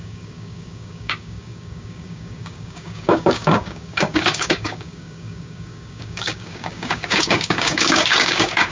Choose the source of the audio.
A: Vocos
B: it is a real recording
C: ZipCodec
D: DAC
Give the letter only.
D